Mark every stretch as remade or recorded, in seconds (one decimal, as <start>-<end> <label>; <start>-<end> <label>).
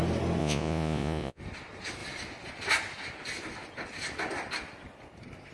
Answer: 0.0-0.4 recorded; 0.4-1.4 remade; 1.4-5.5 recorded